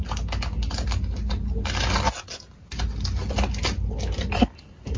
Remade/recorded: recorded